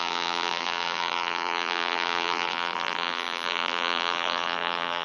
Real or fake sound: fake